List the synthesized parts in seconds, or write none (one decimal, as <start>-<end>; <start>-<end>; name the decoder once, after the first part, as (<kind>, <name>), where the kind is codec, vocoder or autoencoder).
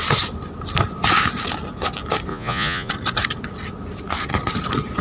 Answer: 2.3-2.9 (vocoder, Vocos)